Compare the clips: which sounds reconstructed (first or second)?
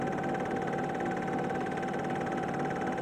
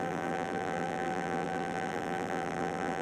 second